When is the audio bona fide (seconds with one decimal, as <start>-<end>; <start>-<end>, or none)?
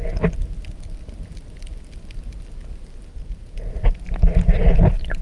0.0-3.1; 3.7-5.2